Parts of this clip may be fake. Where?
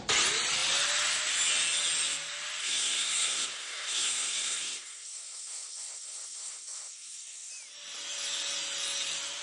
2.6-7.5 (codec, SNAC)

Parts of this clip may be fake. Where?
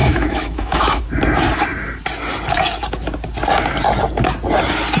0.0-1.0 (autoencoder, DAC-VAE)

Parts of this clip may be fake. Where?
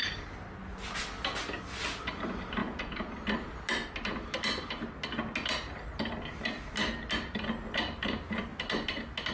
2.6-3.1 (vocoder, Vocos)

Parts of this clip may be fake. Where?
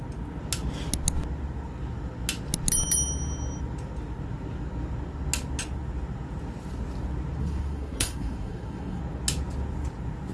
7.4-9.0 (codec, SNAC)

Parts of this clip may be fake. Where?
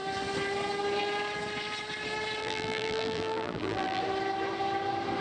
2.4-4.0 (vocoder, BigVGAN v2)